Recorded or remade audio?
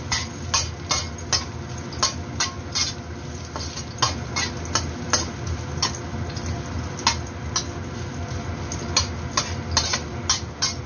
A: recorded